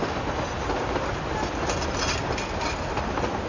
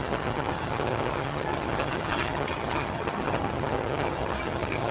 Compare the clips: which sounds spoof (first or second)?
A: second